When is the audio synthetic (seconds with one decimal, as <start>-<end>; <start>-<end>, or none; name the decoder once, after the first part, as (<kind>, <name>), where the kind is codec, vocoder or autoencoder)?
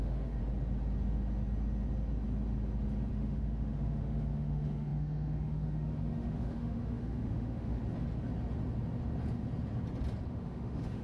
0.0-0.4 (autoencoder, DAC-VAE); 3.1-7.8; 10.3-11.0